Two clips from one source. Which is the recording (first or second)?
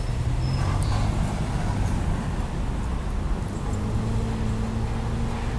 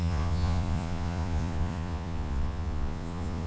first